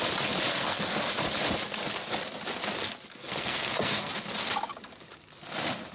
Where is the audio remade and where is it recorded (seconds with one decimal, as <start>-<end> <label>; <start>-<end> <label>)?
0.0-0.5 recorded; 0.5-1.1 remade; 1.1-3.1 recorded; 3.1-4.1 remade; 4.1-5.9 recorded